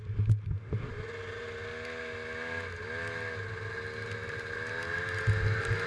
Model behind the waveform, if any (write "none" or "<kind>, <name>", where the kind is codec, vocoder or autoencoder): none